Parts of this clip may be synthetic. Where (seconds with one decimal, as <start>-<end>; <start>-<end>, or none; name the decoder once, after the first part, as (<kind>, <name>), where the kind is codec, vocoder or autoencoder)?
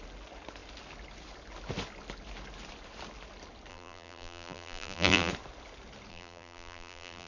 3.7-5.3 (vocoder, BigVGAN v2); 6.1-7.3